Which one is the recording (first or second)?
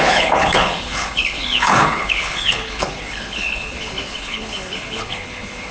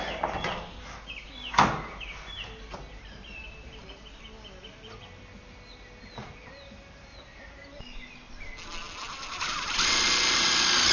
second